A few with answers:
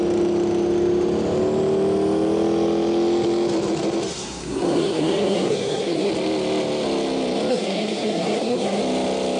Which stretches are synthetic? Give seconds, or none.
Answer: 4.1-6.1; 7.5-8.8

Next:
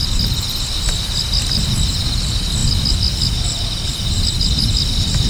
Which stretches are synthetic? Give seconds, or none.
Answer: none

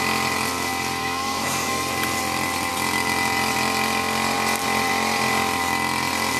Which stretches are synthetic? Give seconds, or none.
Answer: 1.0-1.9

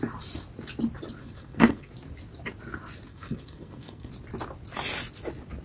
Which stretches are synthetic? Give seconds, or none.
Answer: 1.2-1.9; 3.1-4.1